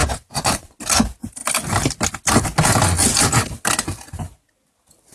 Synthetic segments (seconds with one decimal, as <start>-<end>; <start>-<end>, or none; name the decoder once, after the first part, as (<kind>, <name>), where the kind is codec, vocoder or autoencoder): 0.0-0.8 (vocoder, Vocos)